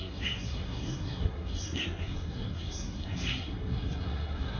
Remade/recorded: remade